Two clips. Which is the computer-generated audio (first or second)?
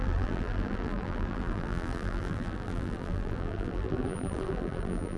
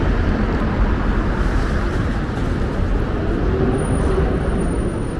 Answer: first